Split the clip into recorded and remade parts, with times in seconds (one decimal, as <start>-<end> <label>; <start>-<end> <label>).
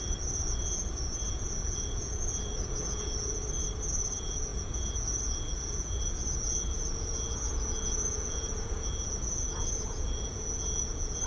0.0-3.4 remade; 3.4-3.9 recorded; 3.9-11.3 remade